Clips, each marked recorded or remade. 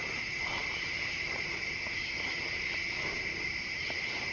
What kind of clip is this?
recorded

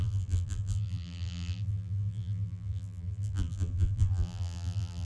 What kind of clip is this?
remade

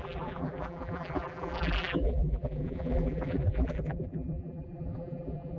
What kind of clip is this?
remade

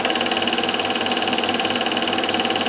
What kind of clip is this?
recorded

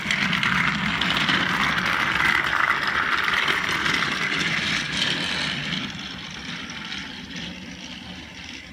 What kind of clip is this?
remade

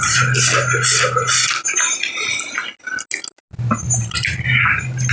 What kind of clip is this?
recorded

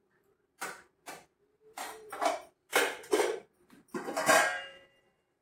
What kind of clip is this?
remade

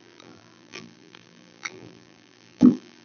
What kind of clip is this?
remade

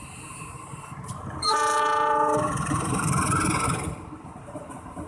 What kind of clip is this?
remade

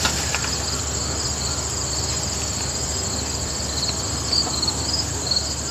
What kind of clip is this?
recorded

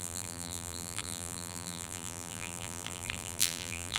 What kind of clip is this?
remade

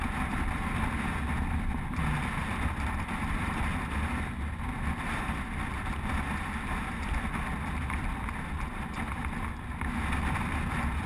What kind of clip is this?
recorded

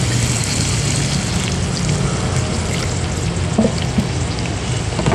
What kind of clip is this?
recorded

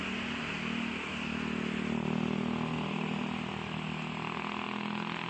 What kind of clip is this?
recorded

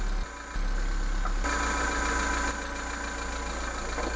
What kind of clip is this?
recorded